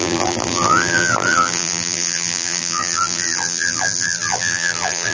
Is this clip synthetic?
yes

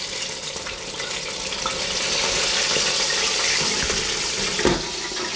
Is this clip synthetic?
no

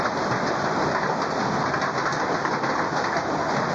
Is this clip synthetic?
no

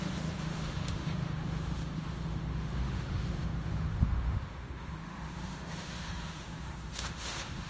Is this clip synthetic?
yes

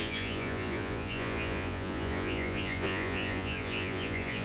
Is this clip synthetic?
yes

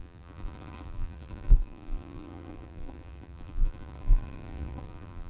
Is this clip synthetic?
yes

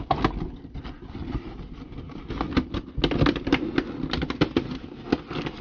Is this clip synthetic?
no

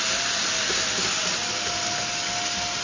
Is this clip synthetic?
no